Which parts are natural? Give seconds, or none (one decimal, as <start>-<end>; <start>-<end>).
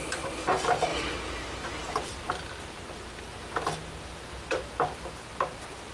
0.0-0.9; 2.3-5.9